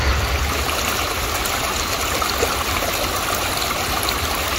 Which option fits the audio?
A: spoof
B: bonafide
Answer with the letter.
B